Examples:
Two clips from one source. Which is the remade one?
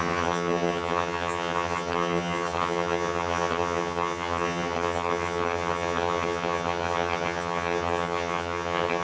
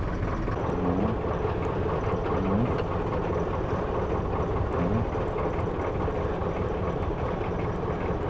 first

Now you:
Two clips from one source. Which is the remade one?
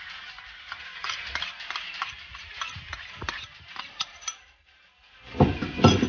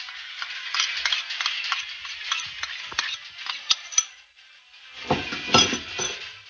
first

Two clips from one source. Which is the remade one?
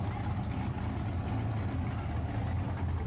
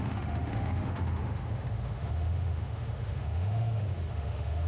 second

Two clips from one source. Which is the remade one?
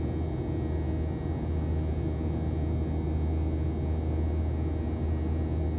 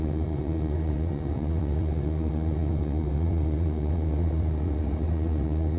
second